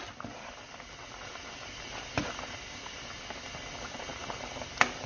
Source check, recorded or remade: recorded